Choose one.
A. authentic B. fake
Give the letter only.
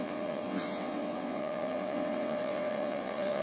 B